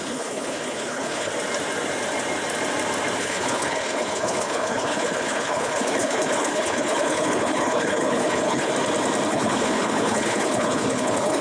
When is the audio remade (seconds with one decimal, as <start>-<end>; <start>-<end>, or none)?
0.0-1.3; 3.2-8.7; 9.3-11.4